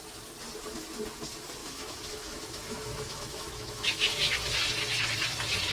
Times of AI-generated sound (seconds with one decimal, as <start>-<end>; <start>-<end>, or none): 1.6-4.1